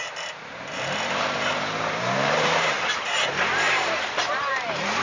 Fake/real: fake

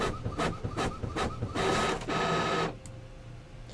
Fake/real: real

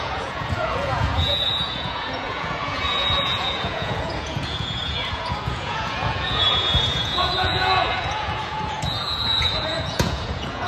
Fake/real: fake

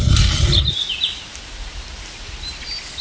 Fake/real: real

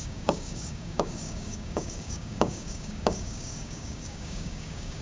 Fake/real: fake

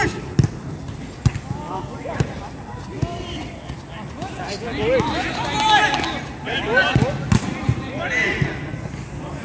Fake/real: real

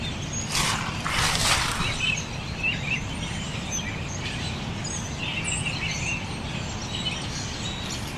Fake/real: real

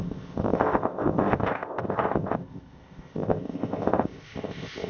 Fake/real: fake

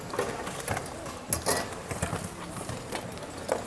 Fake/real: real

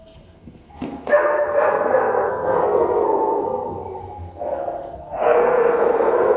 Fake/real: fake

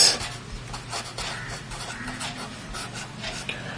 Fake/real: real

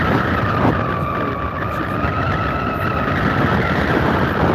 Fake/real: real